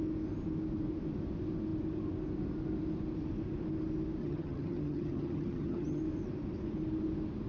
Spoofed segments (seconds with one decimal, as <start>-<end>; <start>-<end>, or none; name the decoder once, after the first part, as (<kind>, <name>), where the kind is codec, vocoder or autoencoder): 4.2-6.0 (vocoder, HiFi-GAN)